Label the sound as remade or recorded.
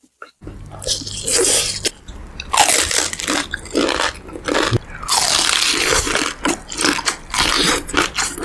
recorded